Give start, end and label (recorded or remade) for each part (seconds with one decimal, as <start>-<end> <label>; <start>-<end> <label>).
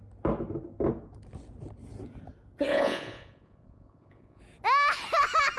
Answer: 0.0-2.7 recorded; 2.7-4.4 remade; 4.4-5.6 recorded